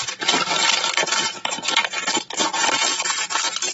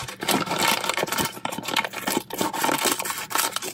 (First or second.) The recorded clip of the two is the second